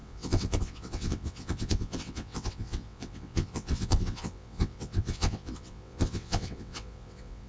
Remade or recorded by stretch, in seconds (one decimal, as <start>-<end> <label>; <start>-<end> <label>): 0.0-7.5 remade